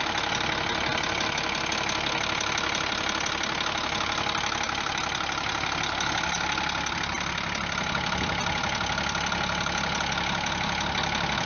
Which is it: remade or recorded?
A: recorded